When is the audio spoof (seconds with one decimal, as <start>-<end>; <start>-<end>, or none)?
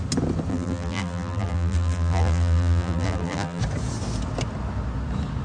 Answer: 0.5-3.6